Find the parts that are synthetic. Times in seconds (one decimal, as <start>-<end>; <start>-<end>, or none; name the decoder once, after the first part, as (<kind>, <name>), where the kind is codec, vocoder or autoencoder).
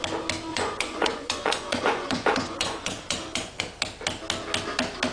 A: 0.5-3.6 (vocoder, Vocos)